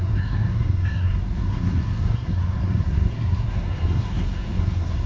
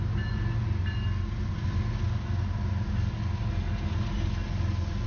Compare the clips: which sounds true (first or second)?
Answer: second